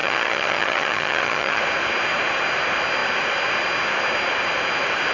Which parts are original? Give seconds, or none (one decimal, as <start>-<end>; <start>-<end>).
1.6-5.1